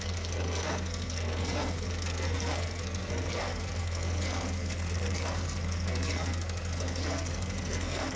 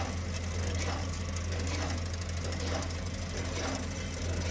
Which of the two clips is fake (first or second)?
first